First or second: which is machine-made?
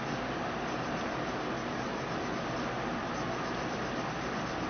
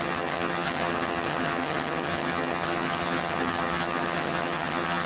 second